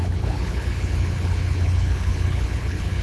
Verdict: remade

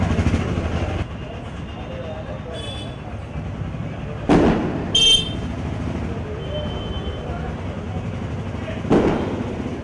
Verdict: recorded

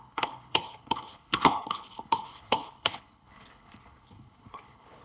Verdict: remade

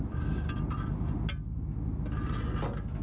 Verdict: recorded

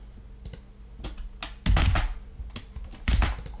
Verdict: recorded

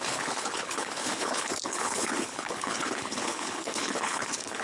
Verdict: remade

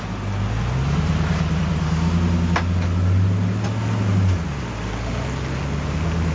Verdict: recorded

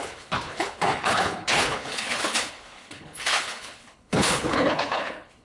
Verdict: remade